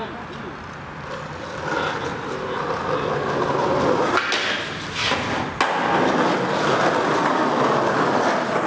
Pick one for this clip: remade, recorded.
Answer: recorded